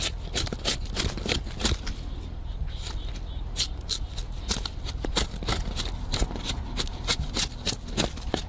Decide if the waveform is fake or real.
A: real